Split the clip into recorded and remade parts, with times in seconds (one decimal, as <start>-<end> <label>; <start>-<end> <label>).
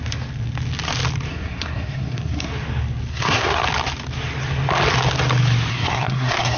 0.0-1.3 recorded; 1.3-2.5 remade; 2.5-3.1 recorded; 3.1-3.6 remade; 3.6-5.7 recorded; 5.7-6.6 remade